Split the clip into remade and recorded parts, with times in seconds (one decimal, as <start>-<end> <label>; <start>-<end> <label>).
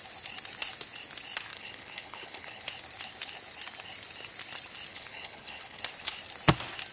0.0-1.5 recorded; 1.5-2.6 remade; 2.6-4.9 recorded; 4.9-5.8 remade; 5.8-6.9 recorded